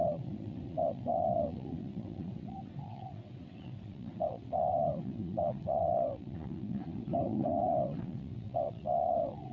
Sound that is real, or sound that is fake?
fake